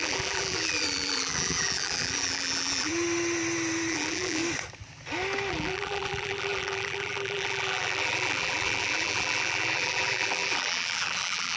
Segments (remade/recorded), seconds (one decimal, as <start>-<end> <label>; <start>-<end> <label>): 0.0-2.9 remade; 2.9-3.9 recorded; 3.9-4.4 remade; 4.4-5.5 recorded; 5.5-11.6 remade